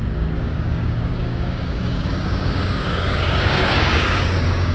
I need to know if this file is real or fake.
fake